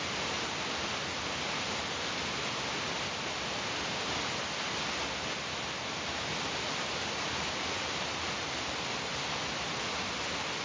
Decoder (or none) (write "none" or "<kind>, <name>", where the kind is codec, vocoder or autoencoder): none